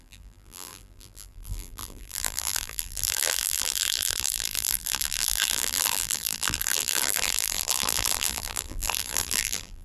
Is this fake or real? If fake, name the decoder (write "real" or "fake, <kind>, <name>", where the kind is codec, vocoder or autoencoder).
fake, vocoder, BigVGAN v2